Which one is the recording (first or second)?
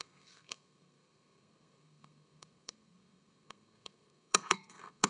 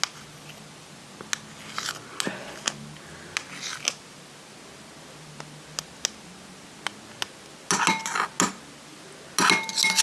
second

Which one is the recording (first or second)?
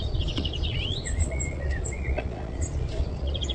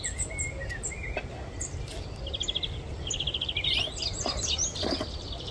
second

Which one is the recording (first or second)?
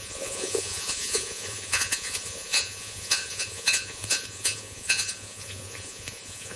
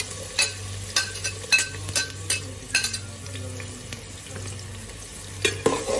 second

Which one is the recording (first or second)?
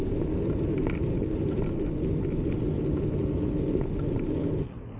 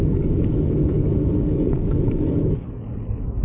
first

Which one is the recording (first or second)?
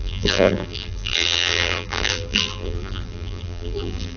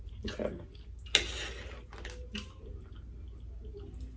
second